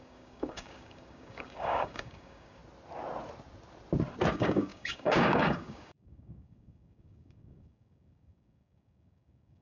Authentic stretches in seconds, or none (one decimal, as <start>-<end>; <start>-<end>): 2.6-4.3